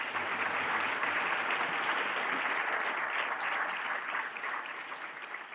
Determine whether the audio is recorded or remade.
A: recorded